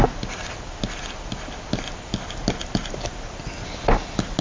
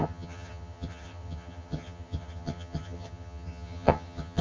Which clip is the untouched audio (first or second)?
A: first